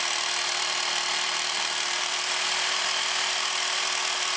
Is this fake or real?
real